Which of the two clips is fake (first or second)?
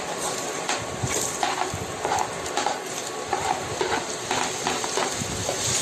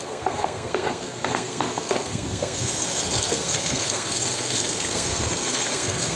second